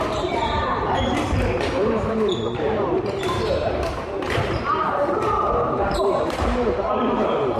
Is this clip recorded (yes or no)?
no